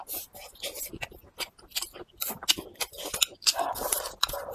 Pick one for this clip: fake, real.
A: real